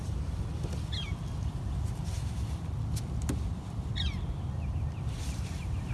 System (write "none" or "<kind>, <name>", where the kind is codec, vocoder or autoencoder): none